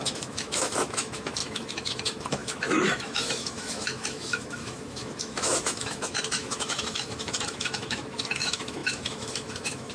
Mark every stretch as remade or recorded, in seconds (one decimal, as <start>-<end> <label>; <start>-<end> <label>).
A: 0.0-9.9 remade